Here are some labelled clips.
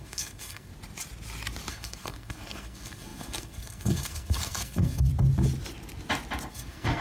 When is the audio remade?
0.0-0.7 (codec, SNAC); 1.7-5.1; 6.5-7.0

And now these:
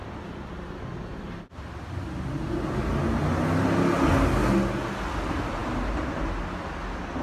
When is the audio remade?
none

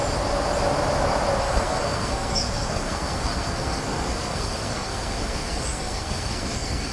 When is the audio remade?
1.4-6.9 (codec, SNAC)

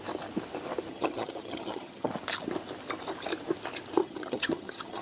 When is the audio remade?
0.9-2.1 (vocoder, HiFi-GAN); 4.0-5.0